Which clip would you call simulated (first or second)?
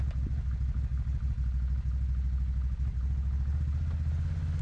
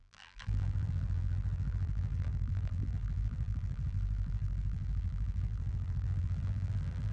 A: second